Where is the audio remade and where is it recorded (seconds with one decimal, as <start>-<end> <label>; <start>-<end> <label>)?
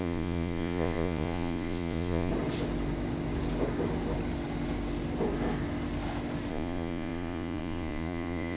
0.0-2.3 remade; 2.3-6.5 recorded; 6.5-8.6 remade